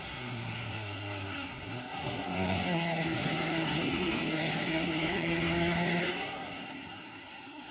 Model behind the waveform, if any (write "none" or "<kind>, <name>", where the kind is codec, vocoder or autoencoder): codec, SNAC